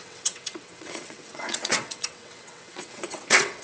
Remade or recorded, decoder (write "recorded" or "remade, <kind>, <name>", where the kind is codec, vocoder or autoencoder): remade, vocoder, WaveNeXt